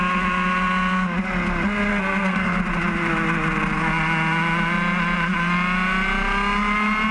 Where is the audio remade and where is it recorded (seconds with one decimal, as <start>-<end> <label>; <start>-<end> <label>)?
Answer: 0.0-1.9 recorded; 1.9-2.6 remade; 2.6-7.1 recorded